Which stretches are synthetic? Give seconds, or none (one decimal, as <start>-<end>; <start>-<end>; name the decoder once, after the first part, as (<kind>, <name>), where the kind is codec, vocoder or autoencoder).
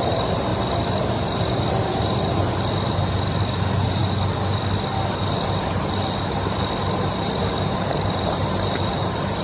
none